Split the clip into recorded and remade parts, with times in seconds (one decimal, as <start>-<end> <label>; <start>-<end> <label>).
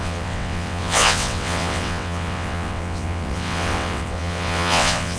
0.0-5.2 remade